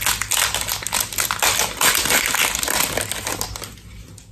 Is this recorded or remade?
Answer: recorded